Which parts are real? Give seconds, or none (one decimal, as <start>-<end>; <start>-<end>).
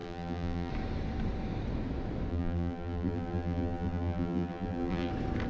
0.7-2.3; 5.1-5.5